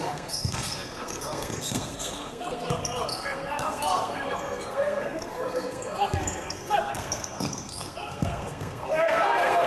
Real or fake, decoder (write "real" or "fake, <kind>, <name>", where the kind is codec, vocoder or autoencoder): fake, codec, SNAC